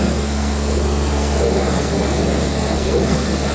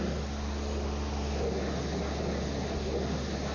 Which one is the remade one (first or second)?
first